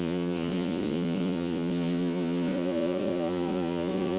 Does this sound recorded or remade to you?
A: remade